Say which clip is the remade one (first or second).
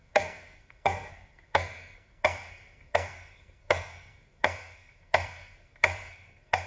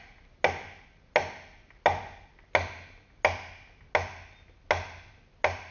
first